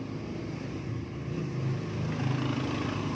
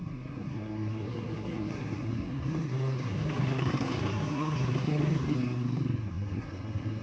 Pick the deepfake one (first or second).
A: second